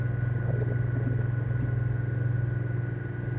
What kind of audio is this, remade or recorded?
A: recorded